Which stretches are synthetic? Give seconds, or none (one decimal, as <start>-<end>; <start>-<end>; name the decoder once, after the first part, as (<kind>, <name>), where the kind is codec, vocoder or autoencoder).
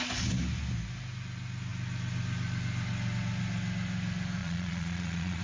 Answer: 4.4-5.4 (vocoder, Vocos)